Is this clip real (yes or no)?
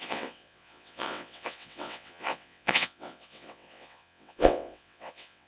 no